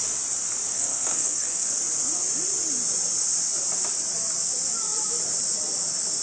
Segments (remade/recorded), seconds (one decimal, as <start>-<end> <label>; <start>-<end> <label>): 0.0-0.7 recorded; 0.7-1.7 remade; 1.7-6.2 recorded